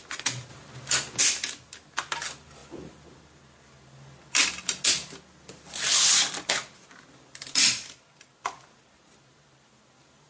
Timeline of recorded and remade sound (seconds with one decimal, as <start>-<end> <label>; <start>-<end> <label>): 0.0-10.3 recorded